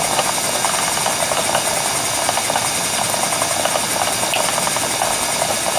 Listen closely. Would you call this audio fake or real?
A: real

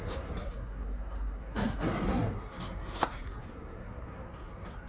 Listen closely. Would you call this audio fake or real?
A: fake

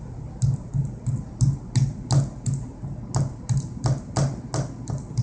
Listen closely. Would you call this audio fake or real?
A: real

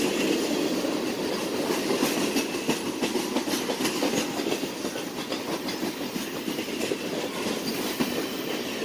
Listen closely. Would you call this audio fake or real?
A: real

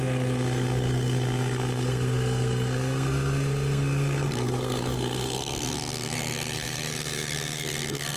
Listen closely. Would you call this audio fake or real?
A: fake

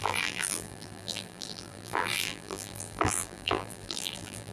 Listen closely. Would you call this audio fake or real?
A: fake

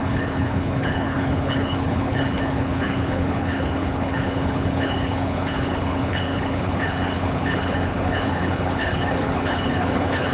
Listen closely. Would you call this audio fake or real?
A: fake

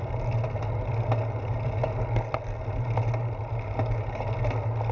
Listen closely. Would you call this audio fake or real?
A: real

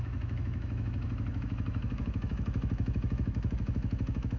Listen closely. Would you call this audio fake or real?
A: fake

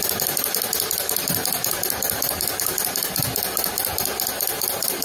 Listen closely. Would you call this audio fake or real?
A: real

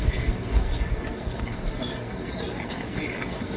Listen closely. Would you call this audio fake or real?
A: fake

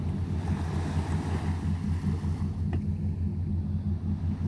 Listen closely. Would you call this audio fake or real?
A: real